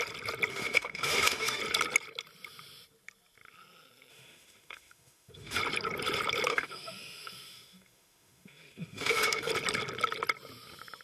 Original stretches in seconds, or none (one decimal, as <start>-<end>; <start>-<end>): 0.0-0.5; 1.6-4.1; 5.6-6.5; 9.5-11.0